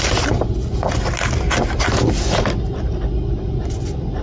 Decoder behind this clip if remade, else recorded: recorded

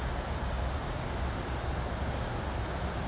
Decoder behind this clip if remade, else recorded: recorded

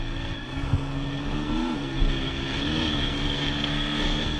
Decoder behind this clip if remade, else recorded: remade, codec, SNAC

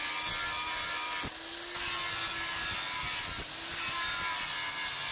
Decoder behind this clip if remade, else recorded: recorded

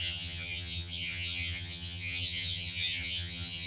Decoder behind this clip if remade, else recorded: remade, vocoder, HiFi-GAN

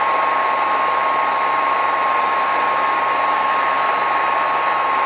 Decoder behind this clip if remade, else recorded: recorded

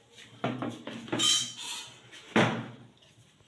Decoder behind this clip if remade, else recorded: recorded